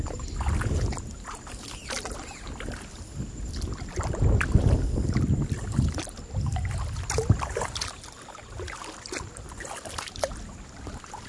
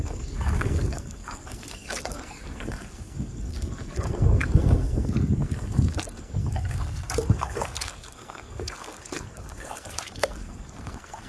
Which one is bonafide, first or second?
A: first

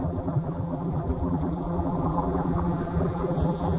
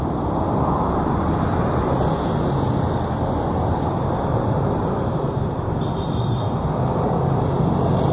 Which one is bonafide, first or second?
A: second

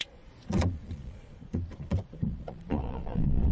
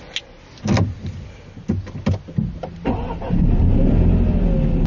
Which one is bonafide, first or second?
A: second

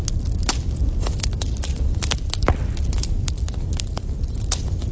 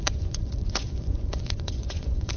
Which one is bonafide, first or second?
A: first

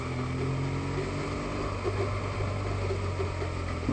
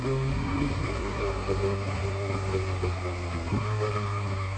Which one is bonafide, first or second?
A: first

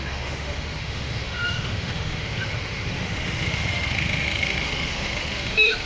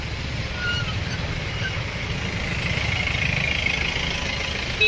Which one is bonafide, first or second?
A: second